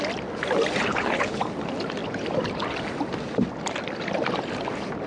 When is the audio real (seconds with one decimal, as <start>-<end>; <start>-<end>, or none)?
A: 0.0-0.9; 1.5-5.1